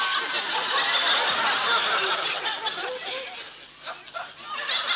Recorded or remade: recorded